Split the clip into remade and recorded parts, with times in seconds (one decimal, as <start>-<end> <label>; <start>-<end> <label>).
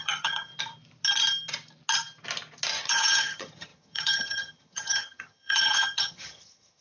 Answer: 0.0-0.5 remade; 0.5-2.7 recorded; 2.7-6.8 remade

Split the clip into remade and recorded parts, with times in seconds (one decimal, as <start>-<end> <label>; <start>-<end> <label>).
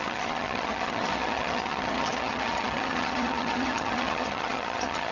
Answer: 0.0-5.1 remade